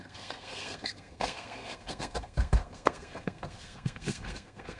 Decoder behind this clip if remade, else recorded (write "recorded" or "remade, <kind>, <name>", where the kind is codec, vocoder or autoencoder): remade, codec, SNAC